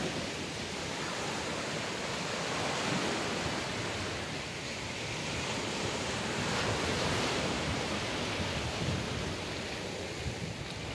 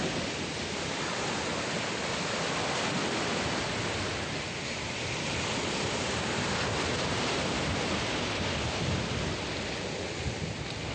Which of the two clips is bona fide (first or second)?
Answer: second